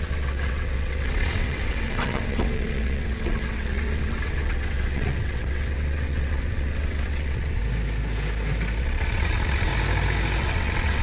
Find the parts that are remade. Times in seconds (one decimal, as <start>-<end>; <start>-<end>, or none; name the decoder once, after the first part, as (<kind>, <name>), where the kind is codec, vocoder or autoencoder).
0.0-7.6 (vocoder, WaveNeXt); 8.8-9.7; 10.4-11.0